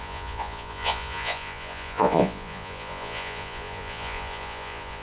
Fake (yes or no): yes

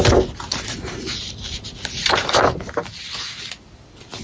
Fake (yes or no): no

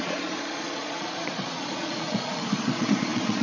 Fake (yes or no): yes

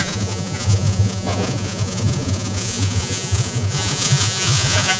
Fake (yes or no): yes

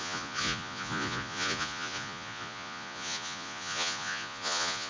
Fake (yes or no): yes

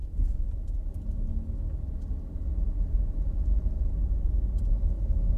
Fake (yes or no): no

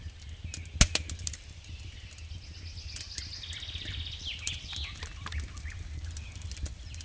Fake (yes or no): no